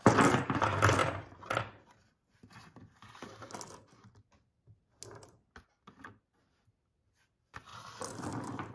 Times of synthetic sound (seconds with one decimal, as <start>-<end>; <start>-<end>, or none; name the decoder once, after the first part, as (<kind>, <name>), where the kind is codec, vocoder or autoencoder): none